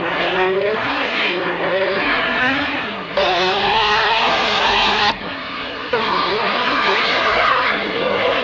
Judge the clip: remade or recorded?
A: remade